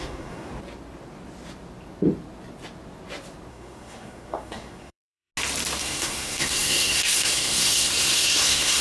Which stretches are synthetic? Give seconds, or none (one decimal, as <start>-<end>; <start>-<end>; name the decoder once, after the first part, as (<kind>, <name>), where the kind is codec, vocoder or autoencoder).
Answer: 0.0-0.5 (codec, SNAC); 3.5-5.3; 5.8-8.8